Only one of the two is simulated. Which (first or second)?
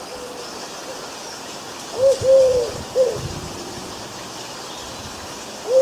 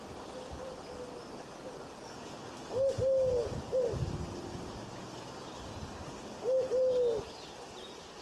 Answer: first